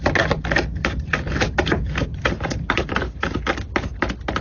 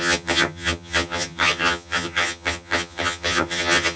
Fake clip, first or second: second